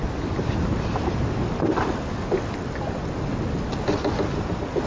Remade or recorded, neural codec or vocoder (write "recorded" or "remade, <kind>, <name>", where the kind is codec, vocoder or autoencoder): recorded